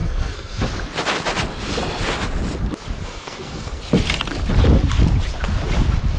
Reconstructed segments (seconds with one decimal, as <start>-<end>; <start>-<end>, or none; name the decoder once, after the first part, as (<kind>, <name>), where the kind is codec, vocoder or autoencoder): 0.0-0.6 (codec, SNAC); 3.0-3.8